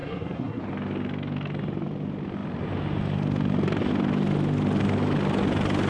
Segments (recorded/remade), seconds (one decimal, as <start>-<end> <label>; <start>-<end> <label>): 0.0-0.6 remade; 0.6-5.9 recorded